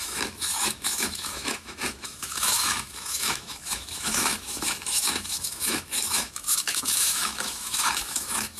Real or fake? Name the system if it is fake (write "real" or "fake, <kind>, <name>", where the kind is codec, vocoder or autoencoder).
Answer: fake, autoencoder, DAC-VAE